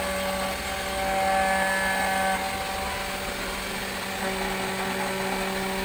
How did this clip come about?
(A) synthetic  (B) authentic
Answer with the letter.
B